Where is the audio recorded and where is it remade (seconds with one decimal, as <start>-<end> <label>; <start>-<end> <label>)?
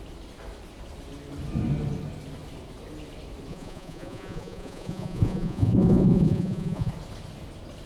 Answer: 0.0-3.5 recorded; 3.5-6.9 remade; 6.9-7.9 recorded